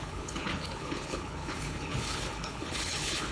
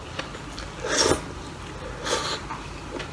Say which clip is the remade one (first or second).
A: first